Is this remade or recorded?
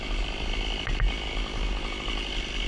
recorded